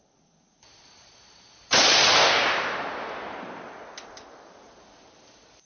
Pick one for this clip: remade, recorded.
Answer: recorded